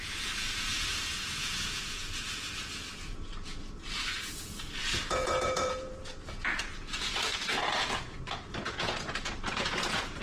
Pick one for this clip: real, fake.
fake